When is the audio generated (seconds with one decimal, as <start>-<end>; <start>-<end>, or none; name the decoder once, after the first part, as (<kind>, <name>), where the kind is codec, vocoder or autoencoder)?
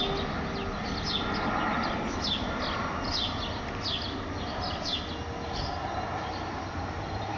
none